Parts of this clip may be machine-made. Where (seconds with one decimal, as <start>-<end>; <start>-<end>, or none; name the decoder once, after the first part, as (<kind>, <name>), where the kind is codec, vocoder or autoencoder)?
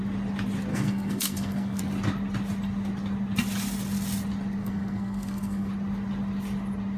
0.7-1.8 (codec, SNAC); 4.6-5.7